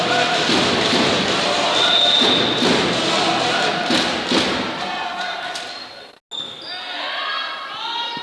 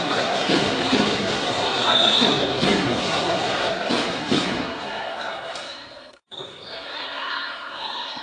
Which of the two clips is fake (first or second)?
second